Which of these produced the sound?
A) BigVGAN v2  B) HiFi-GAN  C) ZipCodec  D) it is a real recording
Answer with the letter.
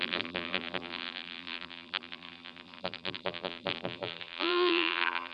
A